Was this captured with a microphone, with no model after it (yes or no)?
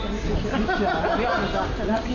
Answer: yes